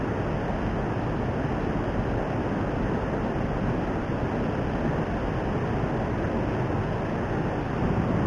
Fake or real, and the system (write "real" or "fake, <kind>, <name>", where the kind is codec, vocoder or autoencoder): real